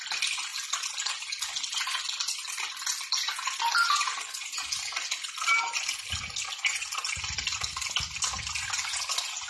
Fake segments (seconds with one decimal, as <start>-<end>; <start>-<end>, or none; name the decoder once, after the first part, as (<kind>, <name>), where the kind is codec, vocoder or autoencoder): none